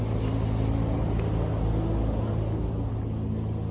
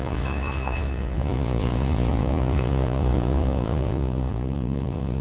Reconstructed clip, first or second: second